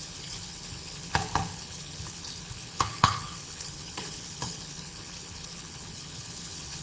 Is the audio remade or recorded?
remade